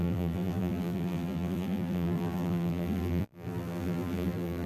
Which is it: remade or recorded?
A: remade